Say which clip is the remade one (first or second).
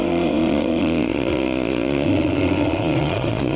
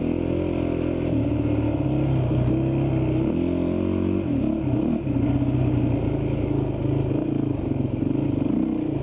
first